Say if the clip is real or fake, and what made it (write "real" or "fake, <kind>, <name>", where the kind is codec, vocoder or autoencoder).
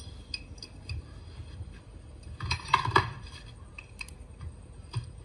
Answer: real